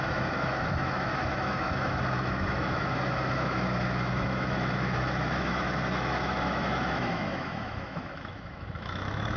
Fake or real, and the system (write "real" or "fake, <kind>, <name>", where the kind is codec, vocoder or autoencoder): fake, autoencoder, DAC-VAE